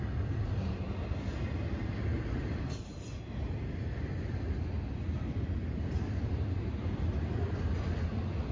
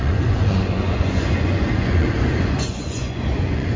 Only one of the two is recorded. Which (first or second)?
first